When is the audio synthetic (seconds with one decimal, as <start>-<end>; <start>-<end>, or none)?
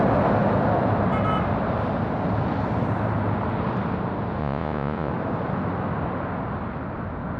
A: 4.4-5.1